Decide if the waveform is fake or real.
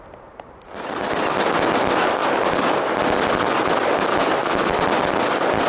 real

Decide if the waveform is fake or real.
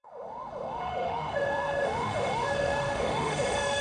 fake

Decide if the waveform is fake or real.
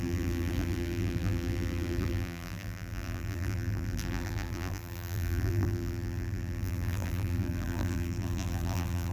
fake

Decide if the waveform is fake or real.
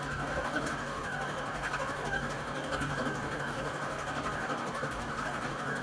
fake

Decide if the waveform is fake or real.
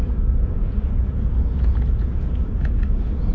fake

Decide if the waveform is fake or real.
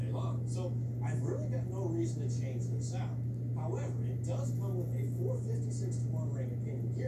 real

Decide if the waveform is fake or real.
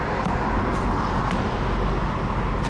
real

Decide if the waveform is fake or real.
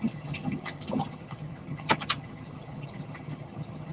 fake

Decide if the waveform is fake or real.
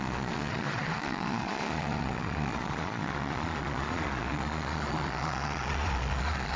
fake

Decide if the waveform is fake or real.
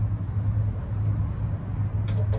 real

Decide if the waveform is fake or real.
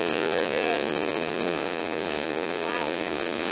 fake